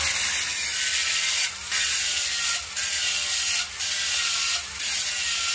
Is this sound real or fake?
real